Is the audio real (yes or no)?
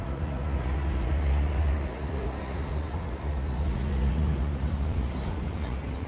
no